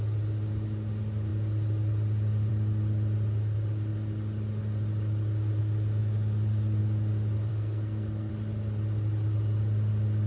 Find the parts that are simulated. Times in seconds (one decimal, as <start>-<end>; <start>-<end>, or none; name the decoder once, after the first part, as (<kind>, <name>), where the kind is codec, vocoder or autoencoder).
7.5-8.3 (codec, SNAC)